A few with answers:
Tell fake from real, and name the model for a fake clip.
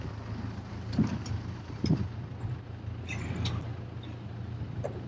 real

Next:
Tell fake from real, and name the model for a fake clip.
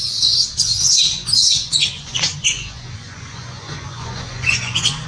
fake, vocoder, Vocos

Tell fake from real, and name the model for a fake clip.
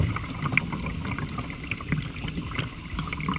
real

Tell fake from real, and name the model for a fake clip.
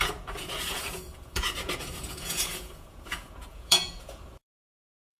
fake, vocoder, Vocos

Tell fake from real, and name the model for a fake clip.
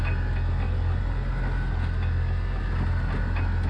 real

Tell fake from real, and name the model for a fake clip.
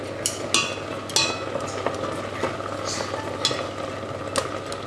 real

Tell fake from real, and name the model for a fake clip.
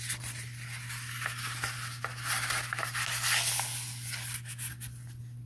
real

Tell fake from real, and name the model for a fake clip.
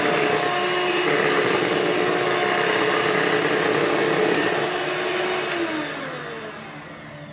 real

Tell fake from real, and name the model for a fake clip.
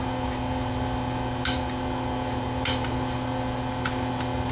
real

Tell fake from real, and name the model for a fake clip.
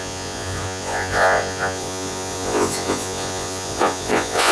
fake, vocoder, Vocos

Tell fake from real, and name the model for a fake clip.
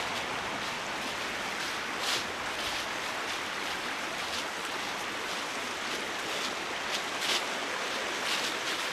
real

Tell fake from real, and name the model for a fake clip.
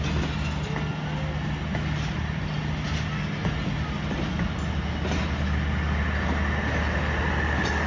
real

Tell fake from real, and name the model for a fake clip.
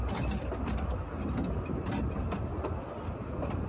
real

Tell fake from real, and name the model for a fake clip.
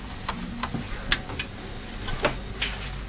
real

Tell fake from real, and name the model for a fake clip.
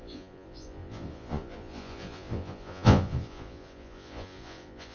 fake, vocoder, Vocos